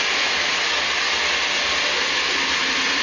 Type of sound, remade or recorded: recorded